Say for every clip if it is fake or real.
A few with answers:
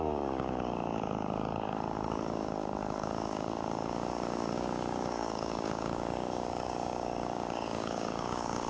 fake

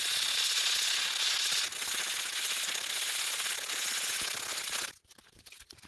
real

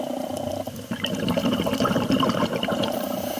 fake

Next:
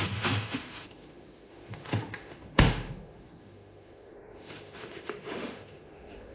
fake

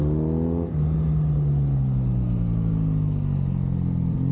real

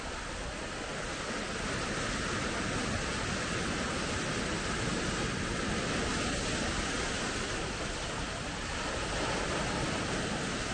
real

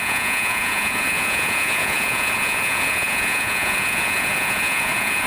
fake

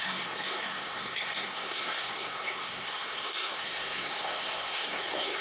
fake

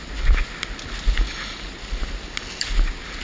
real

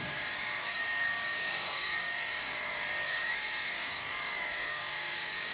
fake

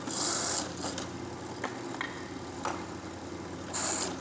real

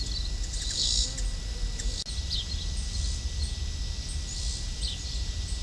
real